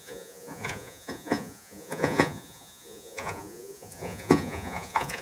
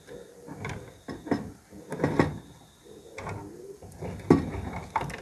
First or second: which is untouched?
second